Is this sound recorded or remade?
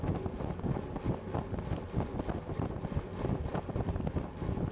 recorded